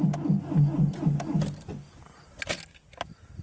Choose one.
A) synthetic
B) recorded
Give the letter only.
B